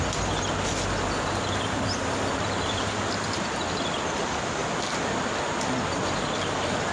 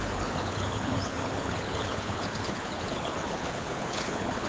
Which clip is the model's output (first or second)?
second